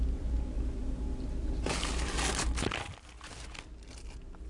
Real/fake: real